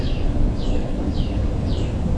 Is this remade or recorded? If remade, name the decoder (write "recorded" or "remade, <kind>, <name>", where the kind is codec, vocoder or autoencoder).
remade, codec, DAC